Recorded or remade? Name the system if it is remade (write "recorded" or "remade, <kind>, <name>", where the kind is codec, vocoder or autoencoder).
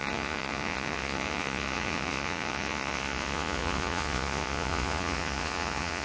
remade, vocoder, Vocos